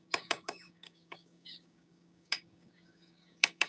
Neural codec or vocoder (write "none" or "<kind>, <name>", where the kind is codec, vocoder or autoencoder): codec, DAC